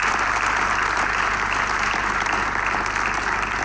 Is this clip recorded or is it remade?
recorded